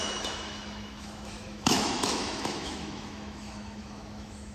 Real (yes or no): no